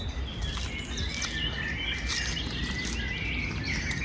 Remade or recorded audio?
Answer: recorded